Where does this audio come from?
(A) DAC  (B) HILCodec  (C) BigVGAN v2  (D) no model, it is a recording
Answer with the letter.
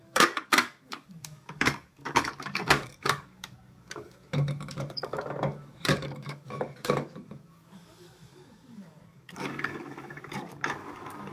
A